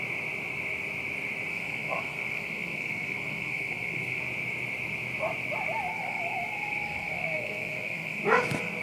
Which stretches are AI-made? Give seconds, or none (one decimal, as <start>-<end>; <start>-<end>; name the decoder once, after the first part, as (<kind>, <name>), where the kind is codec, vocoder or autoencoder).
1.5-4.2 (codec, SNAC); 5.9-8.2